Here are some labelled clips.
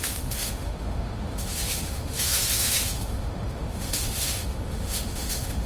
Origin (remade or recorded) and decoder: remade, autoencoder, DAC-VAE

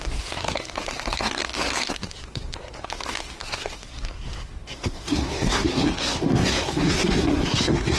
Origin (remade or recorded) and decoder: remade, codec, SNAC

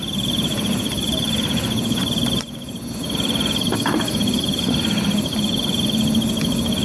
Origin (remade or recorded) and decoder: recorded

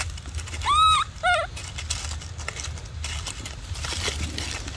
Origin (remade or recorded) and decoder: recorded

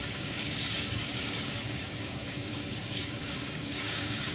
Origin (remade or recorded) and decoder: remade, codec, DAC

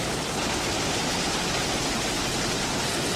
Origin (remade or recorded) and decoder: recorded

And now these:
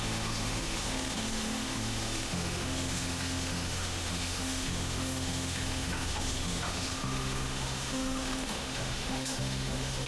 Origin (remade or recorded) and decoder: remade, autoencoder, DAC-VAE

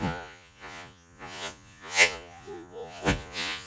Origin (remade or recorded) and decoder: remade, vocoder, Vocos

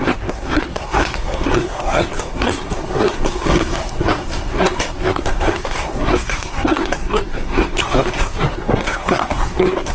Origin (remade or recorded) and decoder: remade, codec, SNAC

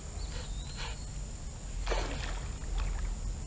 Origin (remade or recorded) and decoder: recorded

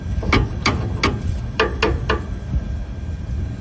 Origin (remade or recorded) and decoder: recorded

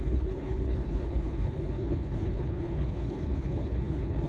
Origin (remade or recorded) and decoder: remade, codec, HILCodec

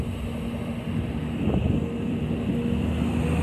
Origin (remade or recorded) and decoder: recorded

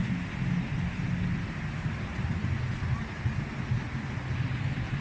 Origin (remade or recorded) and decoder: recorded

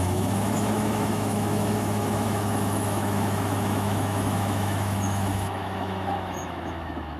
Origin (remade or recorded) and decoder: remade, autoencoder, DAC-VAE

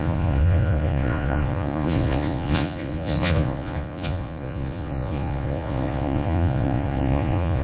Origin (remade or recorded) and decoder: remade, vocoder, Vocos